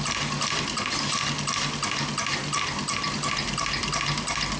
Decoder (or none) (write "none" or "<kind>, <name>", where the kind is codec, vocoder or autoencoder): none